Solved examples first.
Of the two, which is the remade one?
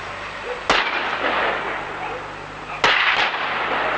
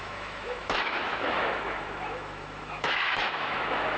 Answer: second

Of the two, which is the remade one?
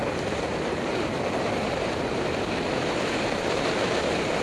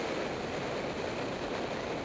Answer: first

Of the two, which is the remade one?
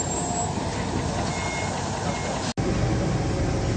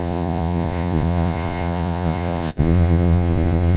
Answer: second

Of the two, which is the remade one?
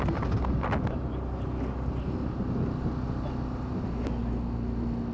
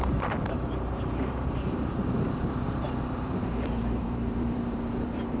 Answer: second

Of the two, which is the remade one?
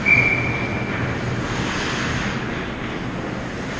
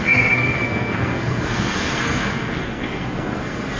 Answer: second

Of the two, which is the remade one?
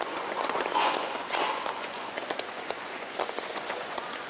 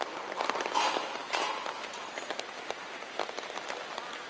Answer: first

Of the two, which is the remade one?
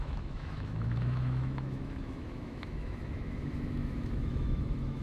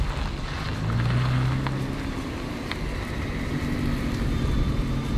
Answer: first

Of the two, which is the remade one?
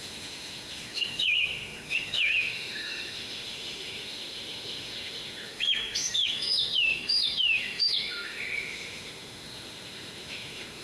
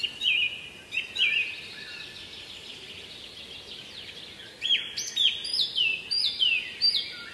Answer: first